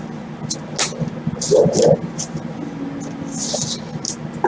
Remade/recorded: recorded